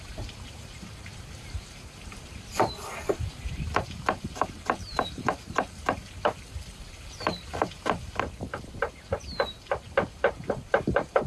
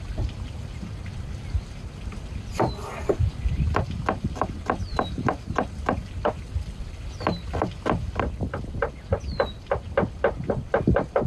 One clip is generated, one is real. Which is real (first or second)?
second